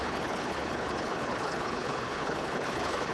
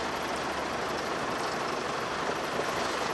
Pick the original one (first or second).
second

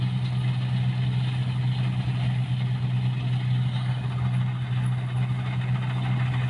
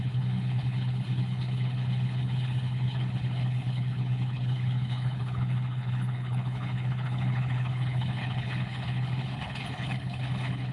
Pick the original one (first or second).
first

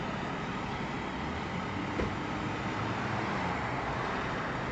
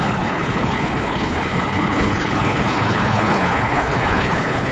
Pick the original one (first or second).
first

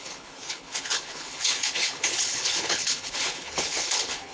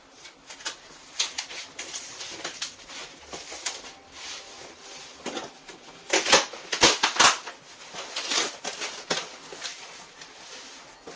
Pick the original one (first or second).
second